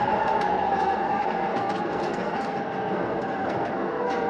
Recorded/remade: remade